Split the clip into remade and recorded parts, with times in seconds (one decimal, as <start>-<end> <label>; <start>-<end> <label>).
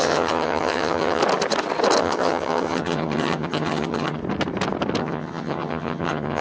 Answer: 0.0-1.2 remade; 1.2-2.0 recorded; 2.0-4.2 remade; 4.2-5.0 recorded; 5.0-6.4 remade